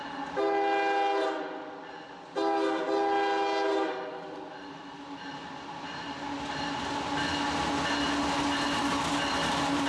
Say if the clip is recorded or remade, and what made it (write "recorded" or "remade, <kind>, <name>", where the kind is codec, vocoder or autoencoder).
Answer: recorded